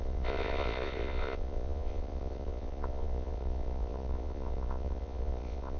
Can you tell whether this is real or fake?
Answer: fake